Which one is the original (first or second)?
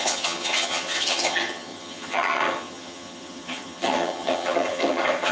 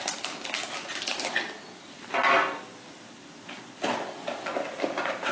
second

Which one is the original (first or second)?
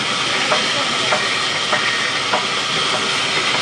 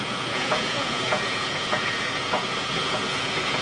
first